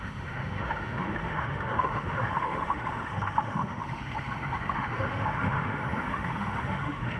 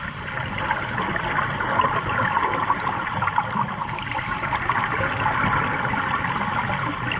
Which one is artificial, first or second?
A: first